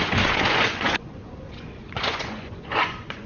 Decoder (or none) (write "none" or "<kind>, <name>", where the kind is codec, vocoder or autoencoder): vocoder, Vocos